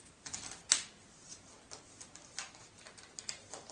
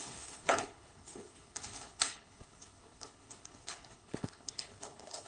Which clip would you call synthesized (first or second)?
second